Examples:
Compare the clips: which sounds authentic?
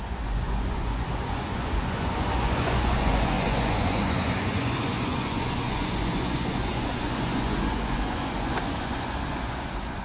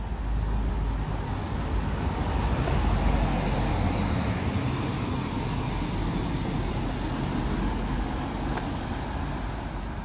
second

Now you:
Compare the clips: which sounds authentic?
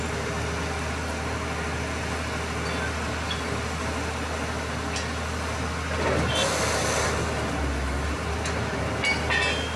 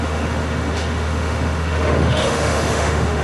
first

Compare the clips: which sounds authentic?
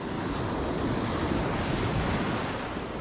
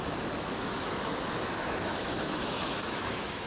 first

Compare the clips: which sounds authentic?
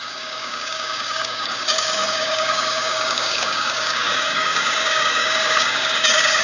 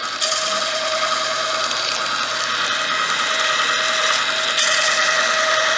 second